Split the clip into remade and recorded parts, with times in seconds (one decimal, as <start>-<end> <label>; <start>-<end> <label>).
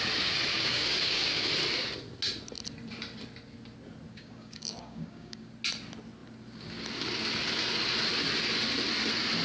0.0-0.5 recorded; 0.5-1.5 remade; 1.5-4.1 recorded; 4.1-5.5 remade; 5.5-9.4 recorded